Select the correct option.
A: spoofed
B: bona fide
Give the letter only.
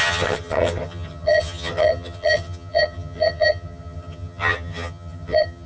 A